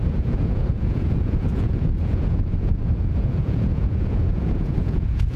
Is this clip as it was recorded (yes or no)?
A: no